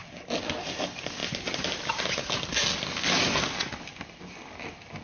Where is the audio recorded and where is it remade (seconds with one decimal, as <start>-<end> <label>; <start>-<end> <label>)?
0.0-5.0 recorded

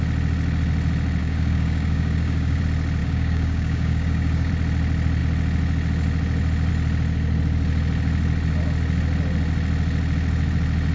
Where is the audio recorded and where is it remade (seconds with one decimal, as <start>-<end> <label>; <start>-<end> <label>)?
0.0-1.2 recorded; 1.2-2.6 remade; 2.6-3.0 recorded; 3.0-4.5 remade; 4.5-10.9 recorded